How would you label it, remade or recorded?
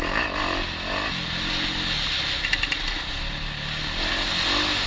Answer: recorded